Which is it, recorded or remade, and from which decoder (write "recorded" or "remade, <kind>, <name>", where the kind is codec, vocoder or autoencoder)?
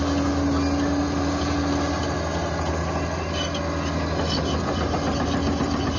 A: recorded